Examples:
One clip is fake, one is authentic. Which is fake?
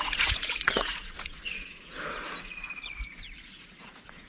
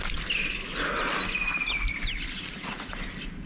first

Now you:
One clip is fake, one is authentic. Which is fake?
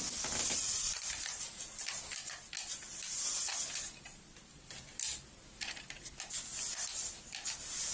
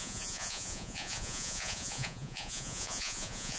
second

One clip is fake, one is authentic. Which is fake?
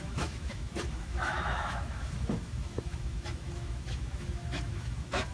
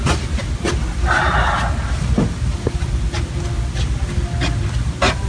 first